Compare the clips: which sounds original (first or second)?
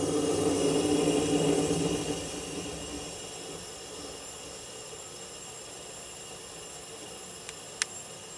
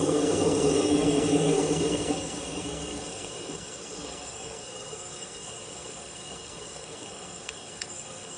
first